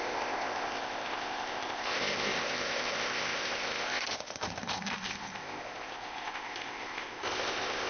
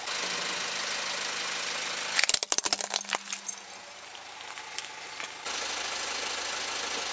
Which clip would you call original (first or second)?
second